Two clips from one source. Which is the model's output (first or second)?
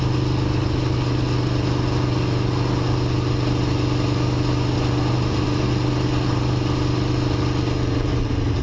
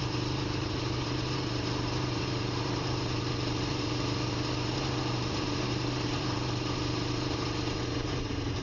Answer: second